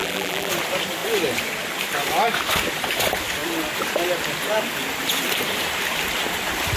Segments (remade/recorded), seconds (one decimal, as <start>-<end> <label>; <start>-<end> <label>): 0.0-0.5 remade; 0.5-6.8 recorded